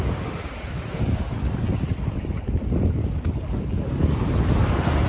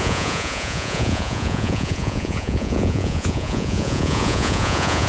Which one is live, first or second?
first